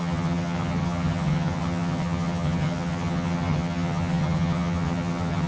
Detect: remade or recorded remade